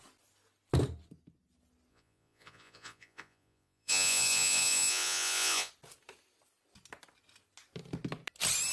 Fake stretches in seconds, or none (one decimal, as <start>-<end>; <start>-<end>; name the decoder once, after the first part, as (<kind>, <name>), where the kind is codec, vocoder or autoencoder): 1.9-5.7 (vocoder, Vocos)